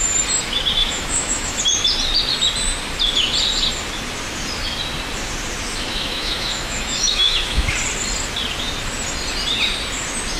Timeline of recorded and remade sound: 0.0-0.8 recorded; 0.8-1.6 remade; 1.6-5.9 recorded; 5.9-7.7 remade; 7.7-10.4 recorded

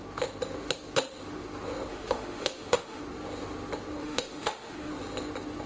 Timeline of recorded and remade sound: 0.0-1.9 recorded; 1.9-3.0 remade; 3.0-4.0 recorded; 4.0-4.9 remade; 4.9-5.7 recorded

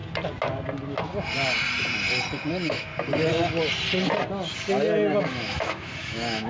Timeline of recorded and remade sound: 0.0-2.5 recorded; 2.5-2.9 remade; 2.9-5.2 recorded; 5.2-6.5 remade

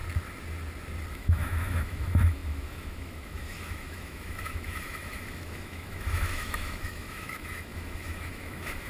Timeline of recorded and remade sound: 0.0-1.1 recorded; 1.1-8.9 remade

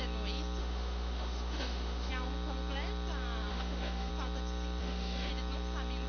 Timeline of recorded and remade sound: 0.0-0.6 recorded; 0.6-2.1 remade; 2.1-3.5 recorded; 3.5-4.1 remade; 4.1-4.8 recorded; 4.8-5.3 remade; 5.3-6.1 recorded